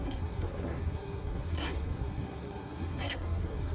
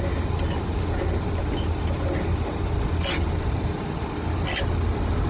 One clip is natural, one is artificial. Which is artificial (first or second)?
first